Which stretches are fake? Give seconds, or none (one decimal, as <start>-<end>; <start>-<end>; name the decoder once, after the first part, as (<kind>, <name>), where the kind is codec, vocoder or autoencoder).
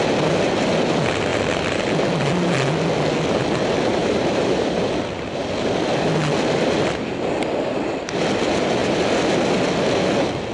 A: 4.0-4.9 (vocoder, BigVGAN v2)